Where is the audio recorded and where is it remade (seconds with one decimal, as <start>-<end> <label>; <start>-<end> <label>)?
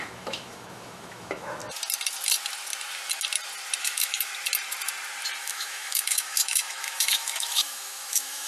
0.0-1.6 remade; 1.6-3.8 recorded; 3.8-4.3 remade; 4.3-5.4 recorded; 5.4-8.5 remade